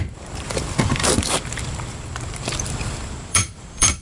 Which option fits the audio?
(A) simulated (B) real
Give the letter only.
A